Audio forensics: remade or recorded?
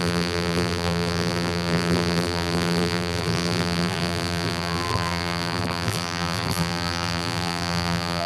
remade